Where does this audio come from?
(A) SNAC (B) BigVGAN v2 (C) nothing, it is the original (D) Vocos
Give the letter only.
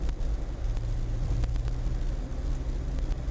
C